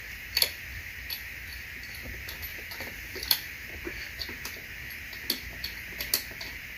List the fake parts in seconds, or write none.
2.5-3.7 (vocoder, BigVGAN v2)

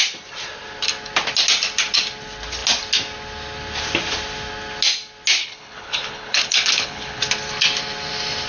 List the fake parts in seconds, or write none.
5.4-7.2 (codec, HILCodec)

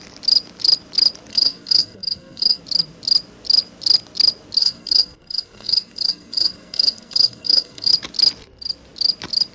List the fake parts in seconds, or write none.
1.3-2.6 (codec, SNAC); 4.6-7.9